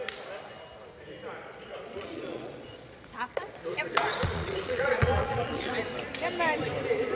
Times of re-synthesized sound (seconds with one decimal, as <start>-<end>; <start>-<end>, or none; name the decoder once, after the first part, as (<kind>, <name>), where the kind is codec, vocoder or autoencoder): 1.4-5.7 (vocoder, Vocos)